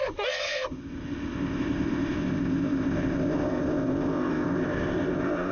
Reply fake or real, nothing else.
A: fake